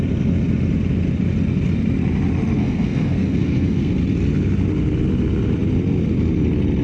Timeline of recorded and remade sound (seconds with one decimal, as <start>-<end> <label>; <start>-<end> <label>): 0.0-2.6 recorded; 2.6-3.9 remade; 3.9-6.8 recorded